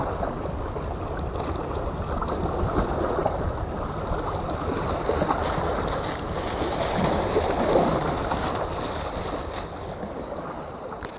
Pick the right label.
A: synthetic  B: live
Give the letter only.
B